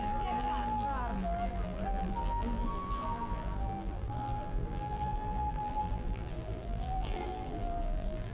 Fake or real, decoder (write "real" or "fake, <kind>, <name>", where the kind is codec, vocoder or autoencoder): fake, vocoder, BigVGAN v2